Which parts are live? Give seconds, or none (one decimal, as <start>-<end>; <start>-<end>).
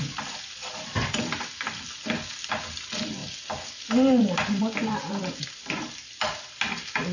none